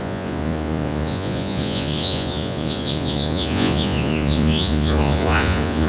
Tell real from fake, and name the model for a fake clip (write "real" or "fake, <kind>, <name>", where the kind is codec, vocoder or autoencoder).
fake, vocoder, Vocos